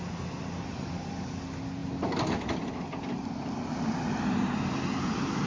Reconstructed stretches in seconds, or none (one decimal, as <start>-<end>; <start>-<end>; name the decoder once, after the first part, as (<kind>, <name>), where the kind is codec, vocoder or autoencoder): none